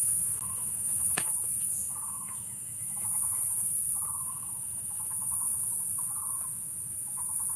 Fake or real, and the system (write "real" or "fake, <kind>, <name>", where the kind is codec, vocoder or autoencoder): fake, autoencoder, DAC-VAE